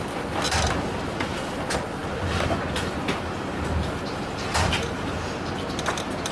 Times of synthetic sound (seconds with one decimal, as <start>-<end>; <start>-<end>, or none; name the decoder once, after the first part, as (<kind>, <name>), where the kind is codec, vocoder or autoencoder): 0.0-2.0 (vocoder, BigVGAN v2); 4.1-6.3